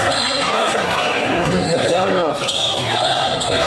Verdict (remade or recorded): remade